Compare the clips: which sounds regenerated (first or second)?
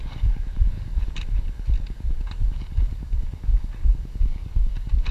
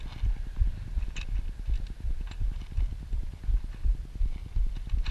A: first